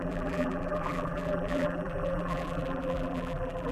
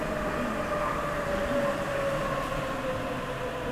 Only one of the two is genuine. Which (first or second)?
second